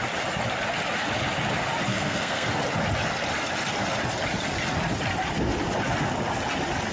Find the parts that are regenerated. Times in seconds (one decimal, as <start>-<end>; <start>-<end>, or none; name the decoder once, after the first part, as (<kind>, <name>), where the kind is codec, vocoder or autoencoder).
1.9-2.5 (codec, SNAC)